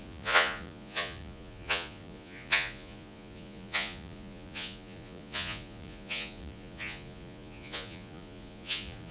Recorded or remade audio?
remade